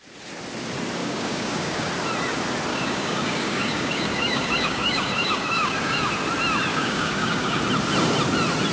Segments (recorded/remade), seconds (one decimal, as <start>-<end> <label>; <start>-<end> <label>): 0.0-1.0 recorded; 1.0-1.9 remade; 1.9-2.7 recorded; 2.7-6.1 remade; 6.1-6.7 recorded; 6.7-7.6 remade; 7.6-8.7 recorded